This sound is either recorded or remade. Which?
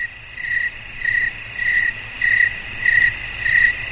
recorded